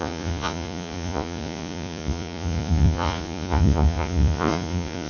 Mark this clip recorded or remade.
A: remade